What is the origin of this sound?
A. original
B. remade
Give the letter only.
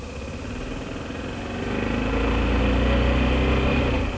A